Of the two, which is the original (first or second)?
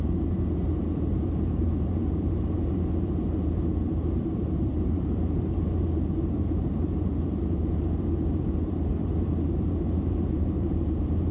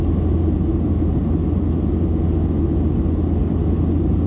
second